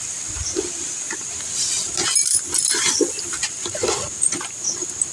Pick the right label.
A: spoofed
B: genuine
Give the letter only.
B